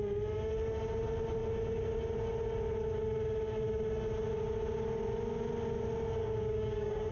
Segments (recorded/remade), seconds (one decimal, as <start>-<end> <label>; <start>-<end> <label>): 0.0-6.2 recorded; 6.2-7.1 remade